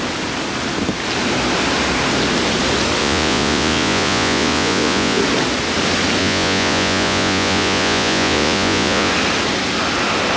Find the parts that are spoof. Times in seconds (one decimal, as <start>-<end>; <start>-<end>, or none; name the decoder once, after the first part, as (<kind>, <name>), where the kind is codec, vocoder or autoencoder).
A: 3.0-5.2 (vocoder, Vocos); 6.2-9.1